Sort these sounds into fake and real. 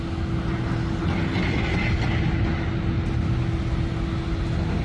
real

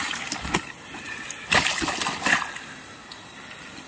real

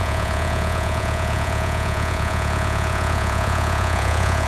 fake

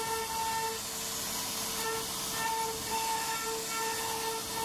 real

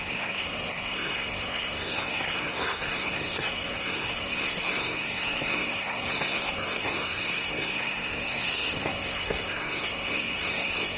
fake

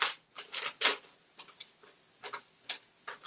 real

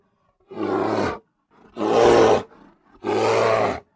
real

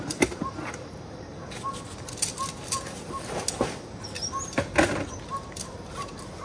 real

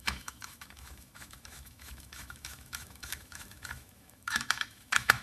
fake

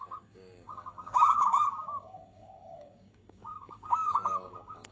fake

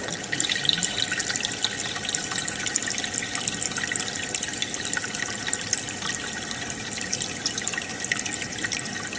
real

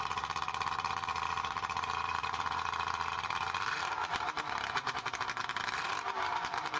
fake